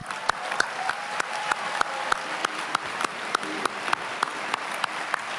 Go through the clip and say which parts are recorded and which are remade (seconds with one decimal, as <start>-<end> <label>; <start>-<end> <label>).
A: 0.0-2.4 recorded; 2.4-3.9 remade; 3.9-4.3 recorded; 4.3-4.9 remade; 4.9-5.4 recorded